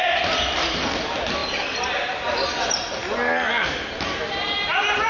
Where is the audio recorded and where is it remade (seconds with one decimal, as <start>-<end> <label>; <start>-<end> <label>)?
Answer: 0.0-5.1 recorded

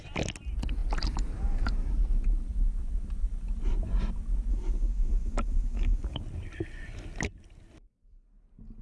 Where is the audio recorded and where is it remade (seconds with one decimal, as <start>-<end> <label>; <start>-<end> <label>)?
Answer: 0.0-4.5 recorded; 4.5-6.2 remade; 6.2-8.8 recorded

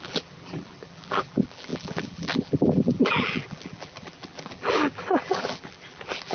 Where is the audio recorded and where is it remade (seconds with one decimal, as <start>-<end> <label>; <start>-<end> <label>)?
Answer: 0.0-6.3 remade

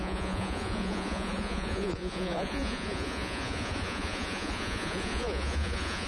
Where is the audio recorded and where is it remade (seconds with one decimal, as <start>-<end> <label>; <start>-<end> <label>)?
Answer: 0.0-6.1 remade

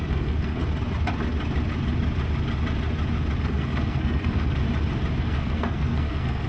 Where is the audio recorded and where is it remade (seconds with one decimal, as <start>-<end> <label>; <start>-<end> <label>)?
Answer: 0.0-0.6 remade; 0.6-3.4 recorded; 3.4-4.6 remade; 4.6-5.2 recorded; 5.2-6.5 remade

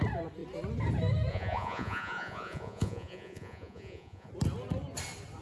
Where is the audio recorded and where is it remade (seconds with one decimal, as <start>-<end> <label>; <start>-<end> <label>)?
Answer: 0.0-1.3 recorded; 1.3-4.3 remade; 4.3-5.4 recorded